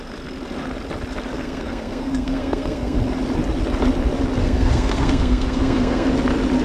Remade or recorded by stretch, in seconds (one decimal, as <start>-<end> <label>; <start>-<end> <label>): 0.0-1.3 recorded; 1.3-3.0 remade; 3.0-4.4 recorded; 4.4-6.1 remade; 6.1-6.6 recorded